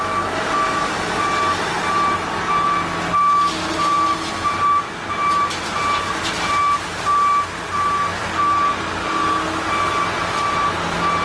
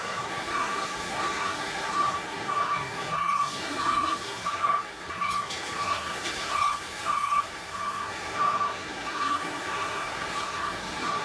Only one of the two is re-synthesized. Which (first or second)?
second